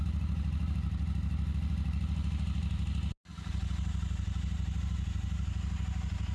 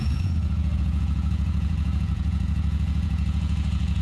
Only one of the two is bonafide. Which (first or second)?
first